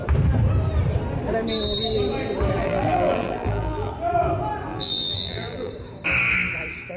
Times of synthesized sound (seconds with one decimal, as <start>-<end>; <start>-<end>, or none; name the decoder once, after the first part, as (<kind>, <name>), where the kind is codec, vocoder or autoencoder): 2.6-3.9 (vocoder, BigVGAN v2); 4.7-5.7